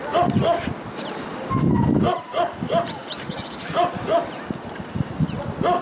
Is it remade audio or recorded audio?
recorded